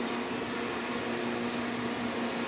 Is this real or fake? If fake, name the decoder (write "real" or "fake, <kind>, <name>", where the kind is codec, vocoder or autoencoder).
real